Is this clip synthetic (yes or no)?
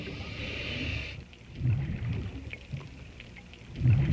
no